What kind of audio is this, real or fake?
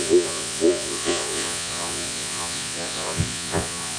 fake